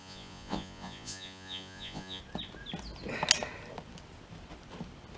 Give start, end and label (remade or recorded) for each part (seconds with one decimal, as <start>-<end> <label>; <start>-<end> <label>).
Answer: 0.0-2.2 remade; 2.2-5.2 recorded